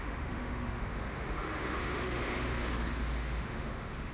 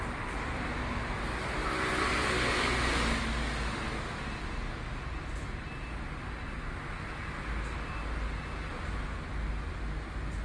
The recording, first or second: second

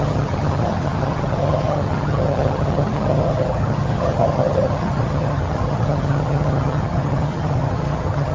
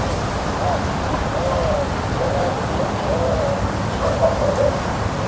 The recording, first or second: second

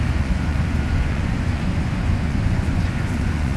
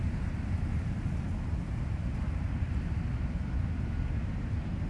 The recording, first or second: second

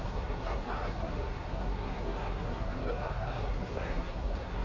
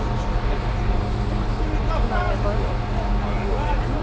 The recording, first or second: second